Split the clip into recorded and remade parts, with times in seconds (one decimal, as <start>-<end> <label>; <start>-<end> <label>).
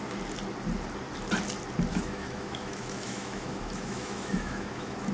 0.0-1.9 recorded; 1.9-5.1 remade